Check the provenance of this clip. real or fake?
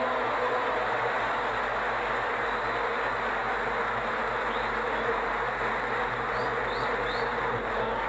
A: real